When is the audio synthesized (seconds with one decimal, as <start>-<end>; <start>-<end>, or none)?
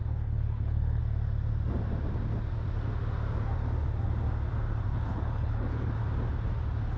0.0-1.0; 4.9-5.9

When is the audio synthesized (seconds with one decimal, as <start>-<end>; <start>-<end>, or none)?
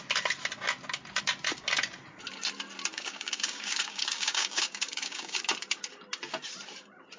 2.9-5.4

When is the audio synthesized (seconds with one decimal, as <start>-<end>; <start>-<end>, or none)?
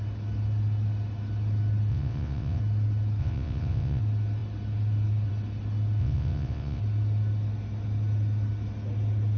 1.9-2.6; 3.2-4.0; 6.0-6.8